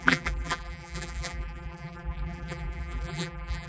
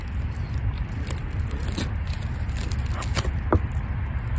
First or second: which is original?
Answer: second